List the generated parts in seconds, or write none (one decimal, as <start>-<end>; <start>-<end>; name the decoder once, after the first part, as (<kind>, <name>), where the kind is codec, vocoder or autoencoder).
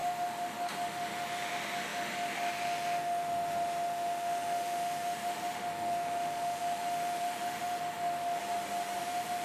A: 0.0-8.4 (autoencoder, DAC-VAE); 9.0-9.4